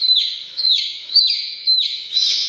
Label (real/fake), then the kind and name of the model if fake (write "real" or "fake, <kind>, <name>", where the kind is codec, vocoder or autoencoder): fake, autoencoder, DAC-VAE